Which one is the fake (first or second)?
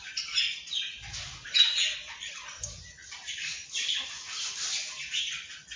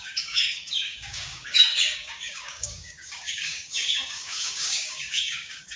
second